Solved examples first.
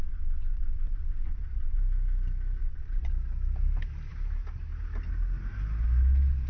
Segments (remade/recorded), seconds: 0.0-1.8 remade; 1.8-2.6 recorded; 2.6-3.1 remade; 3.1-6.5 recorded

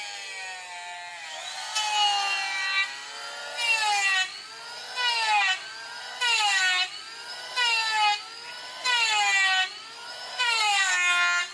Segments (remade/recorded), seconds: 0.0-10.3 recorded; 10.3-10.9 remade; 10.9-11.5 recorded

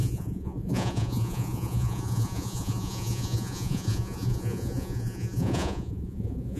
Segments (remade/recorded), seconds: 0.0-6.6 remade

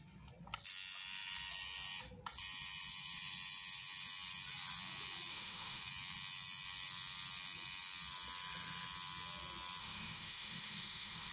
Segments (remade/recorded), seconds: 0.0-5.3 recorded; 5.3-5.8 remade; 5.8-9.8 recorded; 9.8-11.3 remade

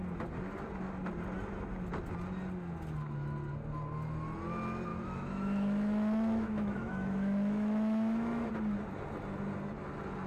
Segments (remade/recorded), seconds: 0.0-4.9 recorded; 4.9-8.5 remade; 8.5-10.3 recorded